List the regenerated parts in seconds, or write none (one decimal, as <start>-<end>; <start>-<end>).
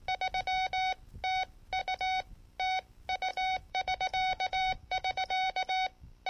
3.3-5.7